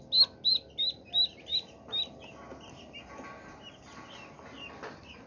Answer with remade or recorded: recorded